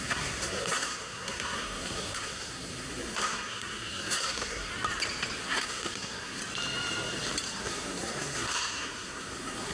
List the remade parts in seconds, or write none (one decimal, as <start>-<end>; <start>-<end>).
0.0-4.7; 5.4-6.4; 7.6-9.7